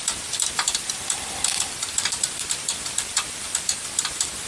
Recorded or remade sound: remade